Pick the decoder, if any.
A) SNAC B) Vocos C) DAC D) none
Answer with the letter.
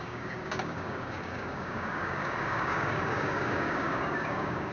C